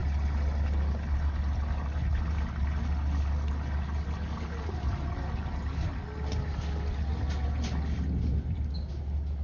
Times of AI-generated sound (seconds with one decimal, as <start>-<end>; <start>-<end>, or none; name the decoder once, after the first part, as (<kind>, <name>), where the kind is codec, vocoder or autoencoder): none